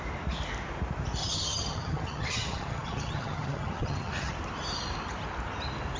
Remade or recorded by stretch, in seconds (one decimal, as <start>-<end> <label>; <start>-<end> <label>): 0.0-1.2 recorded; 1.2-4.3 remade; 4.3-6.0 recorded